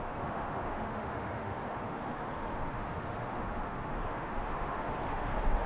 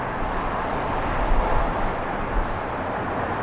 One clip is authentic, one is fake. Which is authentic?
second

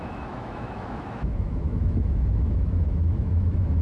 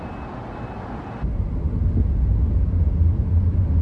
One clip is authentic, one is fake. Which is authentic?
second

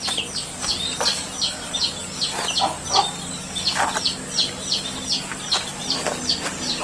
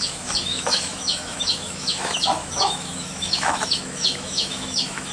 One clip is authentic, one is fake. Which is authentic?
first